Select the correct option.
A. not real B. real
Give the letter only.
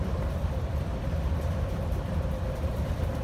A